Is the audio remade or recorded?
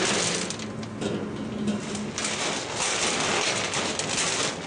recorded